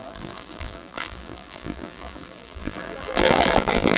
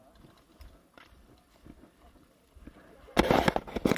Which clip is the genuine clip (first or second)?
second